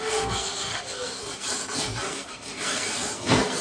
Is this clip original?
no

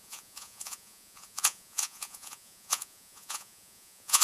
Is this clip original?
no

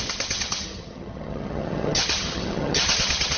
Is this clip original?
no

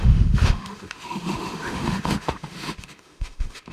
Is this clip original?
no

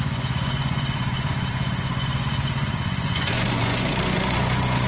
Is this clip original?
no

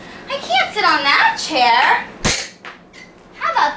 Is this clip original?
yes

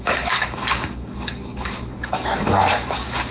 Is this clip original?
no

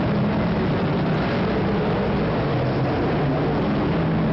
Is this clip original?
yes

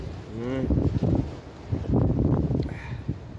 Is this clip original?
yes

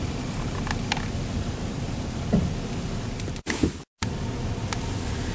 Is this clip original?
yes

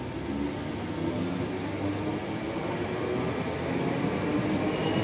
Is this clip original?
yes